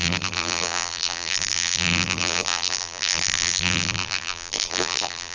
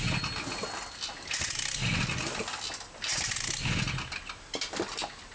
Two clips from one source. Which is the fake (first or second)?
first